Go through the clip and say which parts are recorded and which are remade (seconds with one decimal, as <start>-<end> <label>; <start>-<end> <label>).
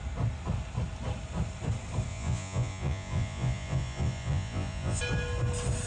0.0-2.1 recorded; 2.1-5.0 remade; 5.0-5.9 recorded